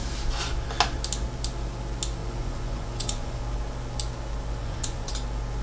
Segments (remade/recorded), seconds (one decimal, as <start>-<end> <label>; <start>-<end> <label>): 0.0-2.2 recorded; 2.2-3.4 remade; 3.4-4.6 recorded; 4.6-5.1 remade; 5.1-5.6 recorded